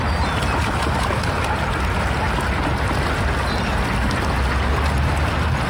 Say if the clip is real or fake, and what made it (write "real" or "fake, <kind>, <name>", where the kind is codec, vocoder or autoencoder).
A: real